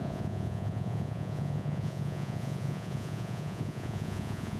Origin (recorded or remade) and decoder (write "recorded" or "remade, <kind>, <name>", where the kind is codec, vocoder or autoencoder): remade, vocoder, Vocos